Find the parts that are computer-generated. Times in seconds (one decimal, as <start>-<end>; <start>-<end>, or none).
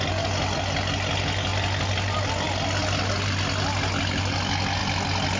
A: none